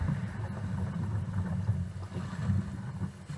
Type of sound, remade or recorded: recorded